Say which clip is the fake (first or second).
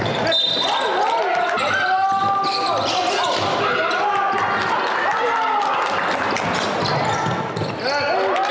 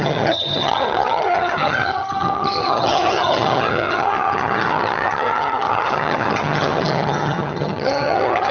second